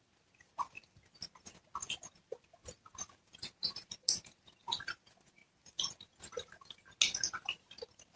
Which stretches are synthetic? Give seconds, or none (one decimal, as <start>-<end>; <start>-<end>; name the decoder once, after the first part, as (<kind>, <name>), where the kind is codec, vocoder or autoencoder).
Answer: none